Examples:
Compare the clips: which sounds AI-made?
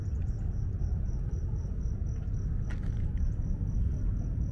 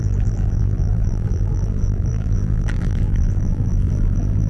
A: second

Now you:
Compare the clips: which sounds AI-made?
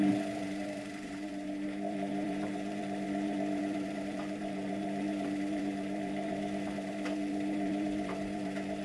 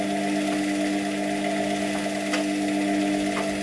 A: first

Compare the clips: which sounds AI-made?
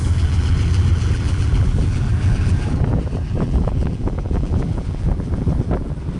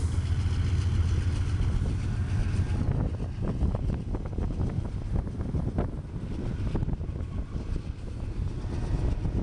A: first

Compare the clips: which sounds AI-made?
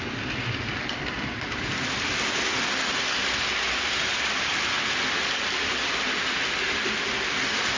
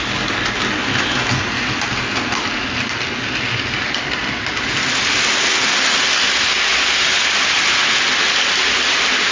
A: first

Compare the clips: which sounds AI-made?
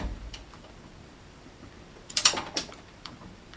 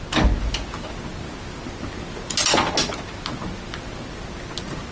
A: first